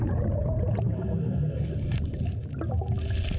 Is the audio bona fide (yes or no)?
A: yes